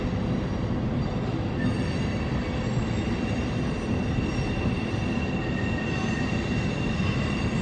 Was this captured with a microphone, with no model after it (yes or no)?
yes